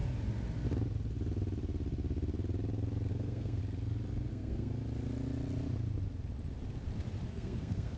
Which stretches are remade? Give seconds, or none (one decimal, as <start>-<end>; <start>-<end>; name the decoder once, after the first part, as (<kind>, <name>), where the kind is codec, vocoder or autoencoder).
3.1-3.6 (codec, SNAC); 4.3-4.7; 7.3-8.0